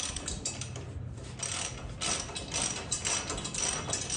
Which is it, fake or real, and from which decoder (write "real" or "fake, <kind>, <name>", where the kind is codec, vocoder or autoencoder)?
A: real